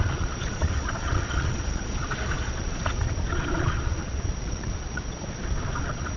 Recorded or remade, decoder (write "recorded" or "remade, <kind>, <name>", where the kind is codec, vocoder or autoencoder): remade, vocoder, Vocos